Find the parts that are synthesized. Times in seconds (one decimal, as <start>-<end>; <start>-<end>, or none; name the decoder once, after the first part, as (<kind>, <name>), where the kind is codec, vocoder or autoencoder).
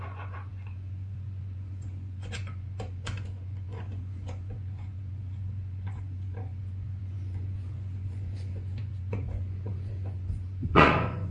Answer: 0.0-11.3 (vocoder, Vocos)